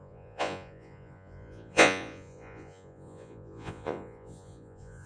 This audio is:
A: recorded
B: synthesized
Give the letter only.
B